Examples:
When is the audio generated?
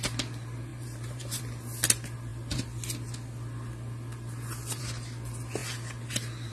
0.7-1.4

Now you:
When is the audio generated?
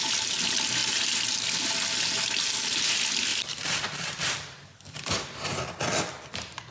0.8-1.6; 3.3-6.7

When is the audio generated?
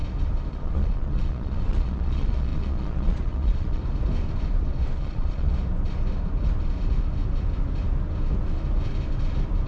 0.5-3.8; 5.0-5.5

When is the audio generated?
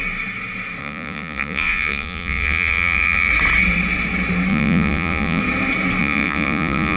0.8-3.3; 4.5-5.4; 6.0-7.0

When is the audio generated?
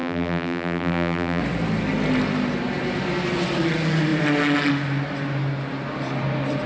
0.0-1.4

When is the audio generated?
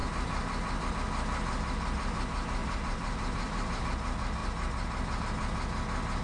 2.6-3.8